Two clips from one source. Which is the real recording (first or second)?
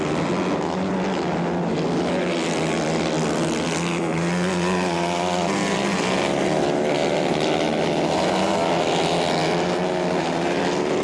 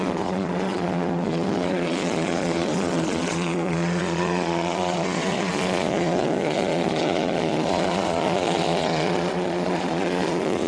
first